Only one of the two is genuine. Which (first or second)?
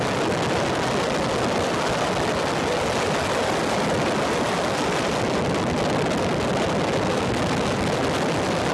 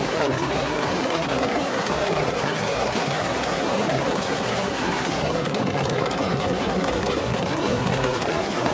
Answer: first